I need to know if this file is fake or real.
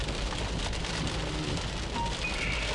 real